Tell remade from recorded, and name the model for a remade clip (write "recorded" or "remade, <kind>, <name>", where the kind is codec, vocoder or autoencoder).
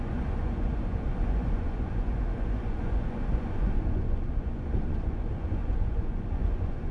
remade, vocoder, Vocos